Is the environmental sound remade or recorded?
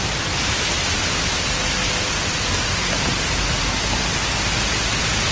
recorded